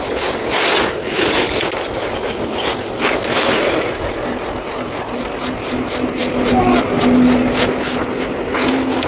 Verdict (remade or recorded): recorded